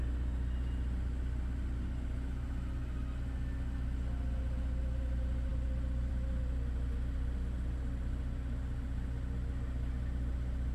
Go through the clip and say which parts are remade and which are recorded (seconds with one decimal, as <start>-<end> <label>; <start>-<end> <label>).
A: 0.0-10.7 recorded